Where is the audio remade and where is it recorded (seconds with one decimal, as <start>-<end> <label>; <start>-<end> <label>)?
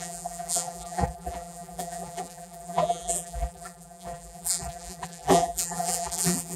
0.0-6.6 remade